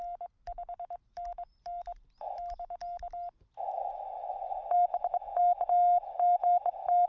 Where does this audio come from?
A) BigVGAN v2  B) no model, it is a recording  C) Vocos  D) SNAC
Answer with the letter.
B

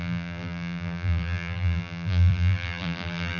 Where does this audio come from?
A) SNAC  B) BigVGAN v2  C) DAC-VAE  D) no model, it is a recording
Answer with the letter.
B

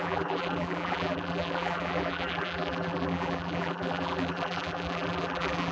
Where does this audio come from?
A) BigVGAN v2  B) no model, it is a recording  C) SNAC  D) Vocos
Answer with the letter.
A